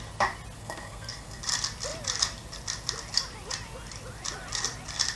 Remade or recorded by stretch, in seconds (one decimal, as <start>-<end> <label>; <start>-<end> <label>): 0.0-0.6 recorded; 0.6-1.4 remade; 1.4-5.2 recorded